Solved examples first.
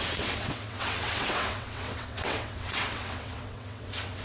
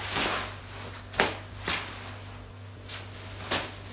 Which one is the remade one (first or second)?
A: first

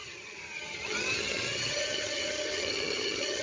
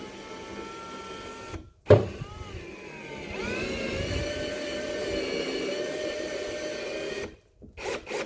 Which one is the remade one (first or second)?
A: first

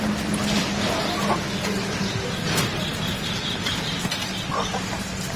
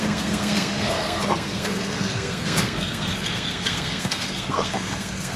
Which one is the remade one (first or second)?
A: second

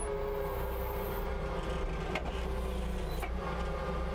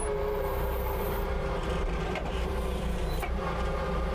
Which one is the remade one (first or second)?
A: second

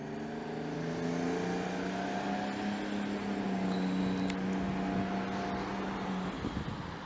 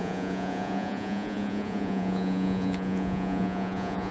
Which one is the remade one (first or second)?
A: second